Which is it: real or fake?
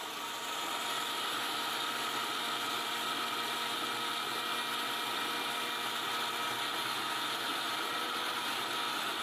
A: real